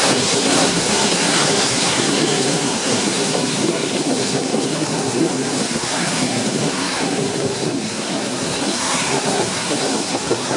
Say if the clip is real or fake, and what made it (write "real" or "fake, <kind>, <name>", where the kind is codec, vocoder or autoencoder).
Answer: fake, codec, SNAC